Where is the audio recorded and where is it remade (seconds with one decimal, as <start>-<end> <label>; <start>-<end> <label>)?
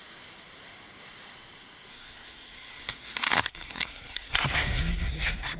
0.0-1.9 recorded; 1.9-5.6 remade